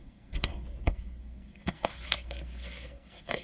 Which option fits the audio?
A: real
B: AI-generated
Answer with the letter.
B